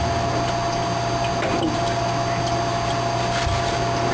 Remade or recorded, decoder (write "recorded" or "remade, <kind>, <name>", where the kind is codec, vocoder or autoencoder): recorded